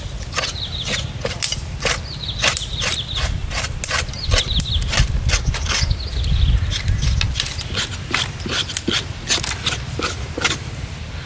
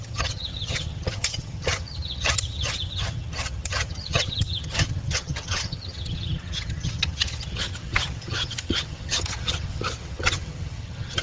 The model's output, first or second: second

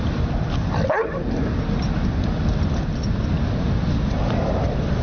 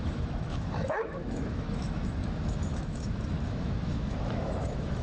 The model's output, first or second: second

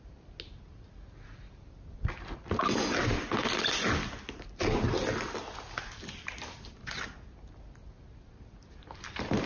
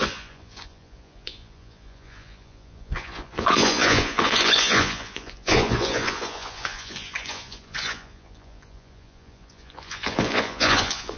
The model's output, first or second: second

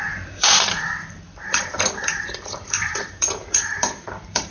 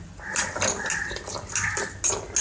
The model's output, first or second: first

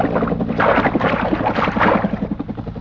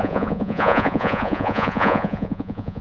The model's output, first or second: second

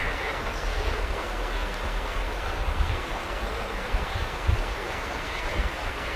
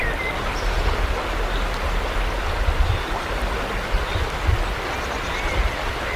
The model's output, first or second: first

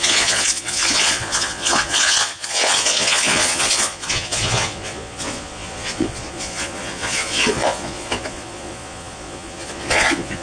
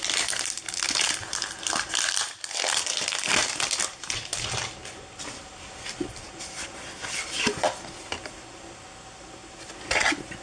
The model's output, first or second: first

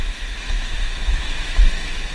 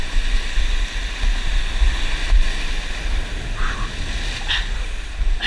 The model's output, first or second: first